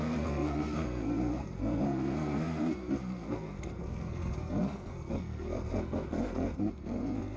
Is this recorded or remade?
remade